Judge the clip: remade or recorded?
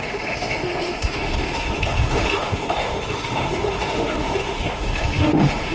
remade